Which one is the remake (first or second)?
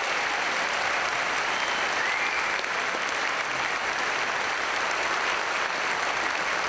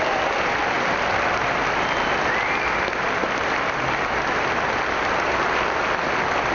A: first